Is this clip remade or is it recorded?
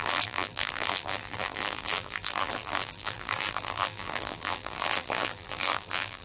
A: remade